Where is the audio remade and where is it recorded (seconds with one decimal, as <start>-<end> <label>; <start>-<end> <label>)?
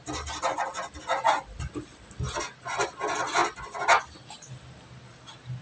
0.0-5.6 recorded